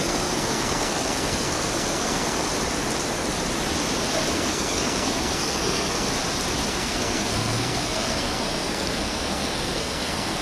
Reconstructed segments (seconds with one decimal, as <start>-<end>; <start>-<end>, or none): 0.0-2.5; 4.3-6.1; 6.7-10.4